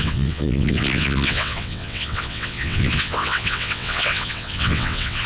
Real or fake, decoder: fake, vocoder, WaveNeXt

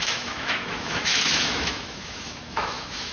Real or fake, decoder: fake, autoencoder, DAC-VAE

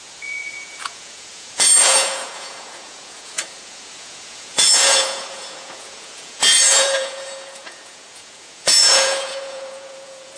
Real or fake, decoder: fake, vocoder, Vocos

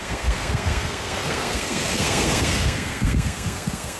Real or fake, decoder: fake, codec, SNAC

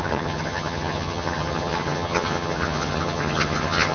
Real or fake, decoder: fake, vocoder, HiFi-GAN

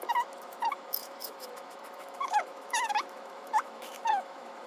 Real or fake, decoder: fake, autoencoder, DAC-VAE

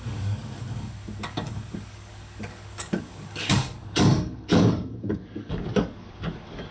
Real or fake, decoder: fake, codec, DAC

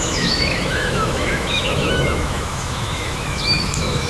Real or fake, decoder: fake, autoencoder, DAC-VAE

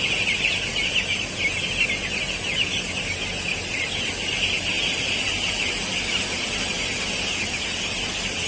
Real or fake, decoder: real